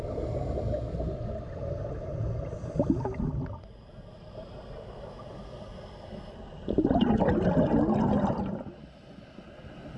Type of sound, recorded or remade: recorded